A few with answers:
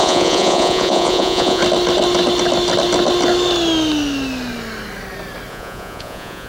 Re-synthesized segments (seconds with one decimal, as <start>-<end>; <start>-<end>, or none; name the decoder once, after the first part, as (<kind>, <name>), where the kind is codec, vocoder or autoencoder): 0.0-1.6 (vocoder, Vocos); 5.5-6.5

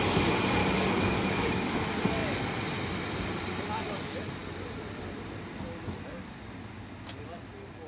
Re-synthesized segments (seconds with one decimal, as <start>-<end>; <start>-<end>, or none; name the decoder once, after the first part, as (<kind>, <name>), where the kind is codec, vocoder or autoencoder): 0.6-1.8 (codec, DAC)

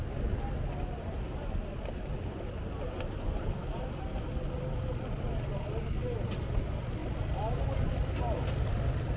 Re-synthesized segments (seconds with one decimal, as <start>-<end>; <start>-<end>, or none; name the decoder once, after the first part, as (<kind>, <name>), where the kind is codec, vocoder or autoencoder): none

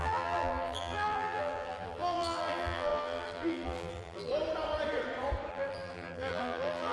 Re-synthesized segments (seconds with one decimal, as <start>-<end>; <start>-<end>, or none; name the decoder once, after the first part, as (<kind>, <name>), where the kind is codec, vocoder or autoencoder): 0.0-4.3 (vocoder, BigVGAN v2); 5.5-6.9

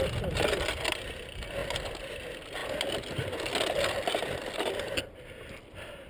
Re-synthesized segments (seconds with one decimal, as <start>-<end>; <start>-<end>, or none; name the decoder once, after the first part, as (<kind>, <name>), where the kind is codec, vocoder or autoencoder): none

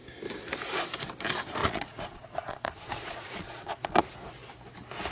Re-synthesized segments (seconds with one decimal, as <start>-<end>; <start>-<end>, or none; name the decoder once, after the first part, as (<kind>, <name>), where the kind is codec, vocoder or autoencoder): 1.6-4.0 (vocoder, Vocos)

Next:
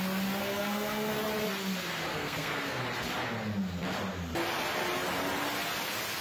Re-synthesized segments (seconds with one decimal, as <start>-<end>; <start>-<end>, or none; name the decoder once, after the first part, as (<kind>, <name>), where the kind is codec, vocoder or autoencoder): 0.4-1.1 (codec, SNAC); 2.1-2.8

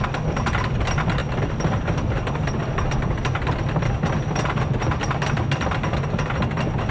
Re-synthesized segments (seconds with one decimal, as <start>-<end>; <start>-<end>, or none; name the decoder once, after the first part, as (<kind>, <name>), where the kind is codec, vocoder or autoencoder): none